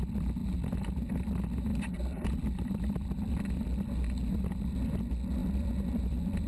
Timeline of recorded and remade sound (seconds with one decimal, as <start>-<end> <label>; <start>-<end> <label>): 0.0-1.7 recorded; 1.7-3.5 remade; 3.5-4.2 recorded; 4.2-5.0 remade; 5.0-5.4 recorded; 5.4-6.5 remade